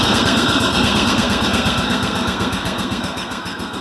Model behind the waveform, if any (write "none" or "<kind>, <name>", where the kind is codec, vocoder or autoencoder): codec, SNAC